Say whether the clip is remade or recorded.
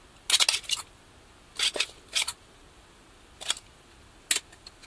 recorded